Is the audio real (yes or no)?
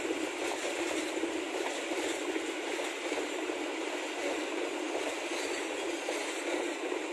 yes